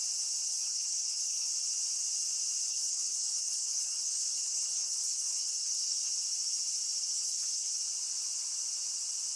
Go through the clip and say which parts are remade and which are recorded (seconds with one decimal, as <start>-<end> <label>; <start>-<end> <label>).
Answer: 0.0-0.4 recorded; 0.4-1.5 remade; 1.5-2.7 recorded; 2.7-6.1 remade; 6.1-7.1 recorded; 7.1-7.8 remade; 7.8-9.4 recorded